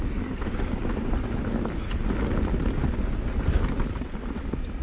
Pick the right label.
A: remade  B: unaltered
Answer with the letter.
B